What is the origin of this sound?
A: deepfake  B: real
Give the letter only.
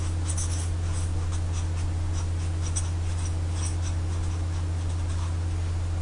B